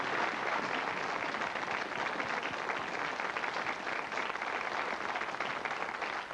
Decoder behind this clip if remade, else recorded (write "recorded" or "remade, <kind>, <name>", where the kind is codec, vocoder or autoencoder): recorded